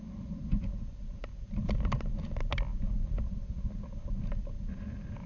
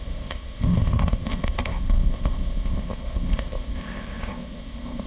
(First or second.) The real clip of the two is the first